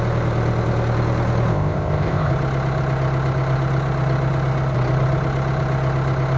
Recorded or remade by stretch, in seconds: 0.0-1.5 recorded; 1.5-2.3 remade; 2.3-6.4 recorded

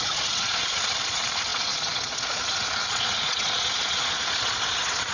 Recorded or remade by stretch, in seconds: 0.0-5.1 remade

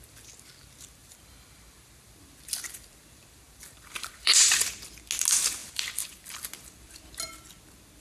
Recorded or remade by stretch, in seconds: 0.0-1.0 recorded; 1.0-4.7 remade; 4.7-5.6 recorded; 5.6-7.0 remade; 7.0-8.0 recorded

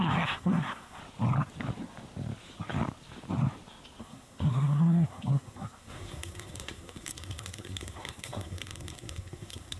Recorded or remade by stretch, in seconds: 0.0-1.0 remade; 1.0-4.0 recorded; 4.0-9.8 remade